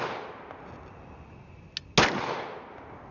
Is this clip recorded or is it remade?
recorded